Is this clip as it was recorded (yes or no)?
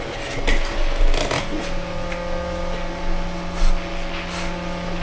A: yes